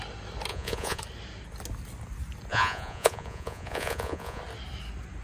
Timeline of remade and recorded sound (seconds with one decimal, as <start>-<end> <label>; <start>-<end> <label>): 0.0-0.5 recorded; 0.5-1.0 remade; 1.0-2.5 recorded; 2.5-4.4 remade; 4.4-5.2 recorded

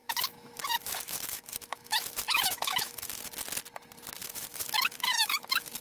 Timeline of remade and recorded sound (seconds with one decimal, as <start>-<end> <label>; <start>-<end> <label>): 0.0-3.2 remade; 3.2-4.2 recorded; 4.2-5.8 remade

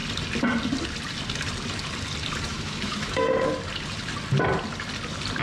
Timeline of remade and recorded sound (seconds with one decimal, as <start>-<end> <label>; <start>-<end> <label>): 0.0-2.5 recorded; 2.5-3.5 remade; 3.5-5.4 recorded

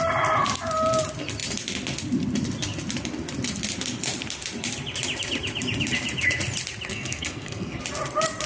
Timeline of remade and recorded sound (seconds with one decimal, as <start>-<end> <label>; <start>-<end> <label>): 0.0-6.9 recorded; 6.9-7.8 remade; 7.8-8.5 recorded

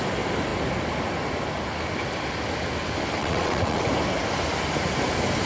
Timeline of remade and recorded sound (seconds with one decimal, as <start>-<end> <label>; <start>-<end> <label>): 0.0-3.2 recorded; 3.2-3.9 remade; 3.9-5.5 recorded

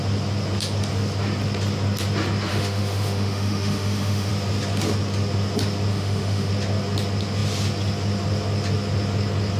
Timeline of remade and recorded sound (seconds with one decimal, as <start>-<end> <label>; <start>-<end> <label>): 0.0-2.5 recorded; 2.5-4.3 remade; 4.3-5.9 recorded; 5.9-6.5 remade; 6.5-9.6 recorded